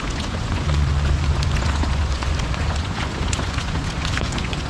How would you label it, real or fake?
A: fake